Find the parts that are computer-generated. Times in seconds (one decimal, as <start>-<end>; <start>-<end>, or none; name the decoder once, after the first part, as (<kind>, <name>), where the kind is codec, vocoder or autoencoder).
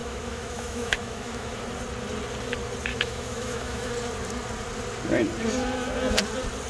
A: 0.0-1.6 (autoencoder, DAC-VAE); 2.9-3.9